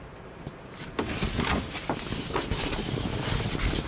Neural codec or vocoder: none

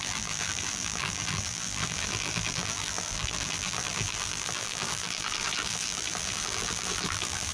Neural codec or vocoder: vocoder, BigVGAN v2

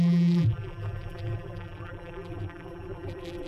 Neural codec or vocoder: vocoder, BigVGAN v2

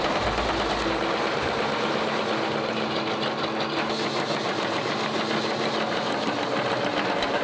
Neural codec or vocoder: none